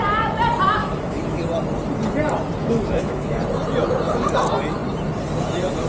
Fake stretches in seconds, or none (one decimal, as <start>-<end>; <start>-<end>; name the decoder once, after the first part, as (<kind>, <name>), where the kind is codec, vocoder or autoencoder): 0.8-1.4 (autoencoder, DAC-VAE); 2.6-3.4